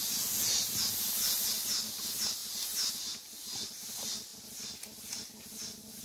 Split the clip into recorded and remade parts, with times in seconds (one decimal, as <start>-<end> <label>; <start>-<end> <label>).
0.0-6.0 recorded